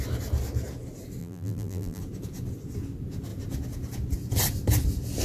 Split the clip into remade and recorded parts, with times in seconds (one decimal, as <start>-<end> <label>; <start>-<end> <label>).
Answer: 0.0-1.2 recorded; 1.2-2.0 remade; 2.0-5.2 recorded